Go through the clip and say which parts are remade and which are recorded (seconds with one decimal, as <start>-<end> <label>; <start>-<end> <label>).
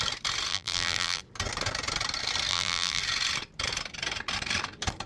0.0-0.5 recorded; 0.5-1.2 remade; 1.2-2.5 recorded; 2.5-3.0 remade; 3.0-5.1 recorded